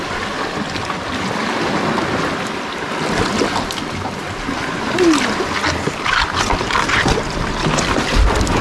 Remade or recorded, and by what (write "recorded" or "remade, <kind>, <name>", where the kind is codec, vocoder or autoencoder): recorded